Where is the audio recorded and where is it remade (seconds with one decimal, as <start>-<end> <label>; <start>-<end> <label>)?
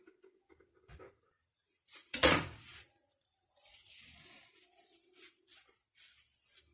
0.0-0.9 recorded; 0.9-4.0 remade; 4.0-6.7 recorded